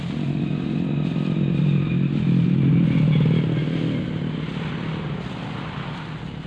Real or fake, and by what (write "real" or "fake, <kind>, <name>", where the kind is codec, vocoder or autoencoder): real